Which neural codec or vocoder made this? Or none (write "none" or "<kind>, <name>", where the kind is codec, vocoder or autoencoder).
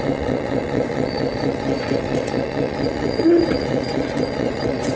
vocoder, WaveNeXt